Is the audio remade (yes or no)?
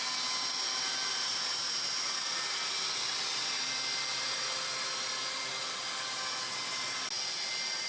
no